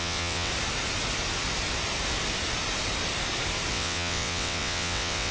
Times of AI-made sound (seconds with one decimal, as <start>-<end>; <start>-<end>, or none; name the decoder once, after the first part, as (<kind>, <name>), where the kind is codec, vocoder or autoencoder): 0.0-0.5 (vocoder, WaveNeXt); 3.7-5.3